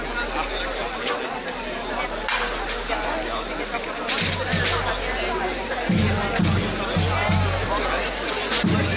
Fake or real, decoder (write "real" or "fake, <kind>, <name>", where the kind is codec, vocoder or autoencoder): real